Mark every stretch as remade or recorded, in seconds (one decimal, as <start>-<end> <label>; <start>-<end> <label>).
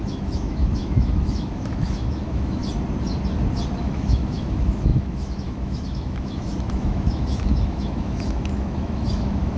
0.0-2.6 remade; 2.6-3.8 recorded; 3.8-9.6 remade